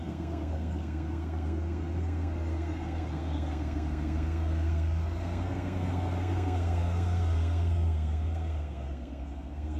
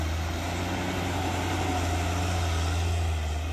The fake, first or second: first